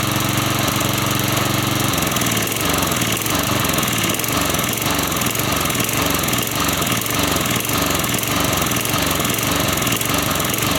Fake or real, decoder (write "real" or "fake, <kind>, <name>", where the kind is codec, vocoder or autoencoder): real